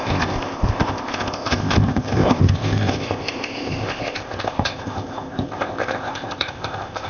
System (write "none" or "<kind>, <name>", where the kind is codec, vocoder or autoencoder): codec, ZipCodec